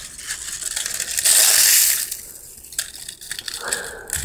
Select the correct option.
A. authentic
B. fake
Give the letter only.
A